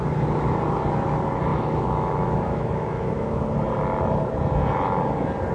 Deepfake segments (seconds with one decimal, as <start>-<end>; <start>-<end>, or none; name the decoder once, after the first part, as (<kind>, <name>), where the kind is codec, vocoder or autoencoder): 1.5-3.4 (autoencoder, DAC-VAE)